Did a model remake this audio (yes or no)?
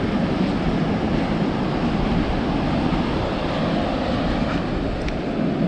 no